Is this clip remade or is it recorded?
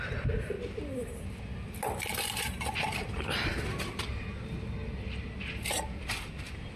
recorded